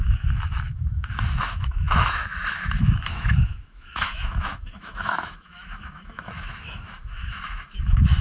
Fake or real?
fake